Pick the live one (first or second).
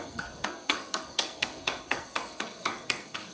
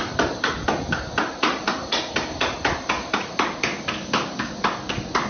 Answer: second